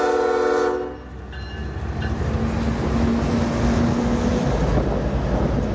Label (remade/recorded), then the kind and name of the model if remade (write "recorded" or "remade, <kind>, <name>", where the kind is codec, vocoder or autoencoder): recorded